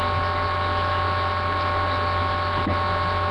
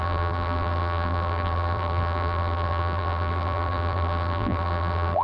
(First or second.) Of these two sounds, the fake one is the second